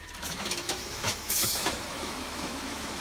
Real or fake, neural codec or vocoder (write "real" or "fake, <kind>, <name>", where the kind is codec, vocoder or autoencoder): fake, autoencoder, DAC-VAE